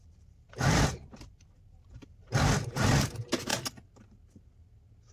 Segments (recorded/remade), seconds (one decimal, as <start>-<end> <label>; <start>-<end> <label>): 0.0-3.1 remade; 3.1-5.1 recorded